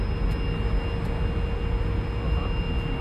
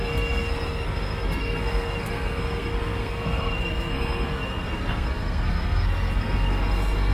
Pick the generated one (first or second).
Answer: second